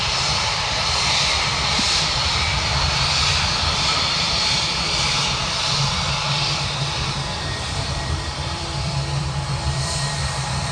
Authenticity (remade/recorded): remade